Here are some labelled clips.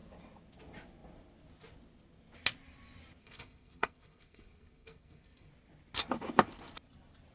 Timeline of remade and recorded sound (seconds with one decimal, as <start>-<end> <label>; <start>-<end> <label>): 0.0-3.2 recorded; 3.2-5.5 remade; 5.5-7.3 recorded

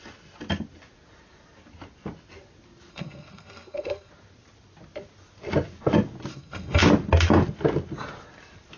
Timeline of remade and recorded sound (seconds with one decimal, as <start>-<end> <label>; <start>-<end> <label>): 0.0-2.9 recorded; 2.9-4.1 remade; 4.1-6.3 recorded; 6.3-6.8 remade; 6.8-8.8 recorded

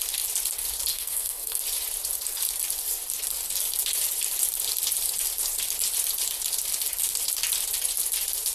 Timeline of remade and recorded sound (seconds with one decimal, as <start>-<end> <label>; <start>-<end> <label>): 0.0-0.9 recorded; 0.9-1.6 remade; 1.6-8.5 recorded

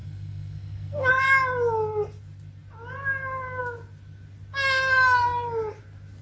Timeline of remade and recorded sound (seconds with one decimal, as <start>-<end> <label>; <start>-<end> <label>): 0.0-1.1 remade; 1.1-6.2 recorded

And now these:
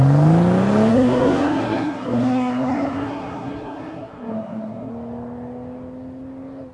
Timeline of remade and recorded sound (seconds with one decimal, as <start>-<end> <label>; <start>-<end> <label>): 0.0-0.9 recorded; 0.9-4.9 remade; 4.9-6.7 recorded

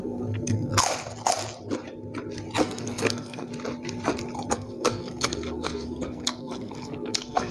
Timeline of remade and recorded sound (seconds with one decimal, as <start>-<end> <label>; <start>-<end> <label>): 0.0-0.7 remade; 0.7-2.6 recorded; 2.6-3.5 remade; 3.5-4.5 recorded; 4.5-7.5 remade

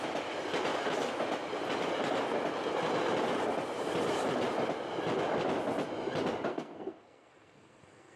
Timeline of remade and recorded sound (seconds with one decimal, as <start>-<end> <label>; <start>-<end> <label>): 0.0-6.5 recorded; 6.5-8.2 remade